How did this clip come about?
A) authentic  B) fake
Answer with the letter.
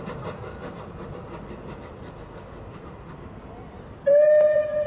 A